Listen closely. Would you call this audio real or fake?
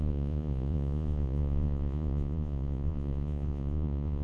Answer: fake